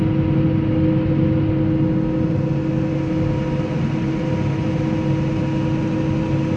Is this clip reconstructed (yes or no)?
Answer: no